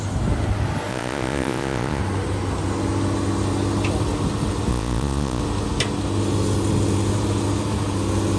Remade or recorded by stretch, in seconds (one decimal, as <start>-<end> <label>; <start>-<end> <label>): 0.0-0.9 recorded; 0.9-2.0 remade; 2.0-4.7 recorded; 4.7-5.4 remade; 5.4-8.4 recorded